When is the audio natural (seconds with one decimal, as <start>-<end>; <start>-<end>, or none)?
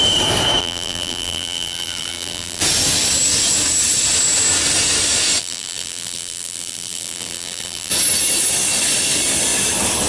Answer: 0.0-0.6; 2.6-5.4; 7.9-10.1